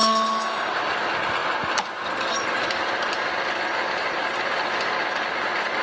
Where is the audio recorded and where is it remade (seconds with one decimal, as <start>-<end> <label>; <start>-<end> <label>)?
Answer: 0.0-0.7 remade; 0.7-5.8 recorded